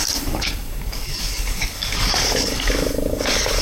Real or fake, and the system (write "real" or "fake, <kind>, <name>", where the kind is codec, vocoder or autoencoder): fake, codec, DAC